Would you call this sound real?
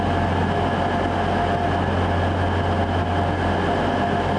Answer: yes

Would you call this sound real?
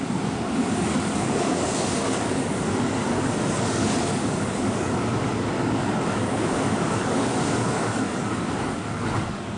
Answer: no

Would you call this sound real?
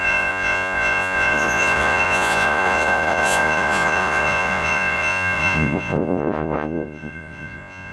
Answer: no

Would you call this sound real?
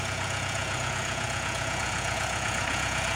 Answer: no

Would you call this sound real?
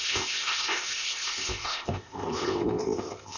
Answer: no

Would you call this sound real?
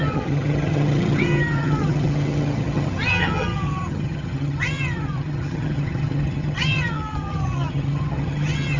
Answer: no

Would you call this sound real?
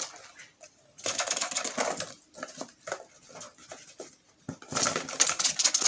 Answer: yes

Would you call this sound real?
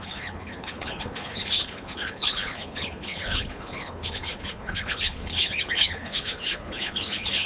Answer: no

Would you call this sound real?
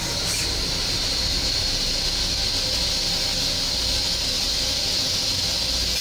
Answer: yes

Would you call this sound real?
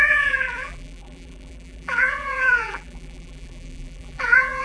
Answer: no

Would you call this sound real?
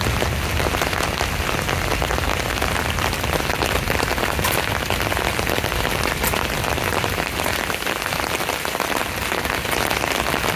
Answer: yes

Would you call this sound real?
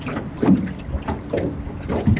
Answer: no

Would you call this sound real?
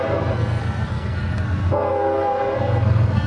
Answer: no